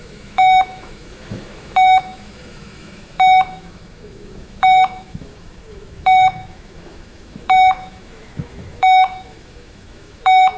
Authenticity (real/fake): fake